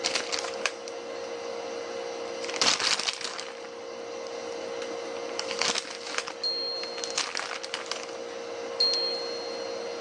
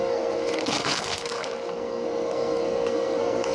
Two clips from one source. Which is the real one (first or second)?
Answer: first